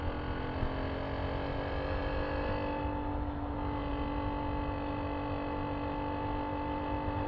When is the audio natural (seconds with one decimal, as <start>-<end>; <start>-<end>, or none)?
0.0-7.3